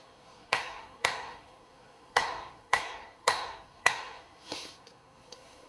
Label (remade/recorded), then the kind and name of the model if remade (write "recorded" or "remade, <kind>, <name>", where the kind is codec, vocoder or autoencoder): remade, codec, SNAC